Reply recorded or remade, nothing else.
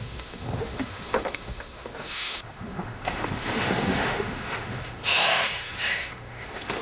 remade